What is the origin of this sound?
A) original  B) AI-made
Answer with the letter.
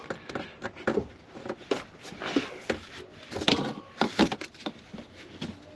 A